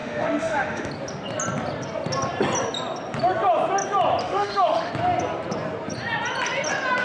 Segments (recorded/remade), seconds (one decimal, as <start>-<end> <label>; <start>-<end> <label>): 0.0-0.9 remade; 0.9-4.2 recorded; 4.2-4.9 remade; 4.9-7.0 recorded